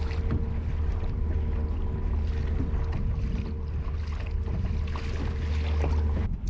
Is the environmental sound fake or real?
real